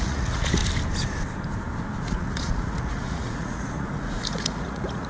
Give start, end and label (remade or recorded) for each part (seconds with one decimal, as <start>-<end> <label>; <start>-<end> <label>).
0.0-0.6 remade; 0.6-2.0 recorded; 2.0-5.1 remade